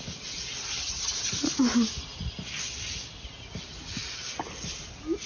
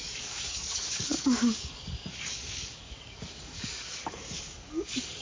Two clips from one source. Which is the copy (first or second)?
second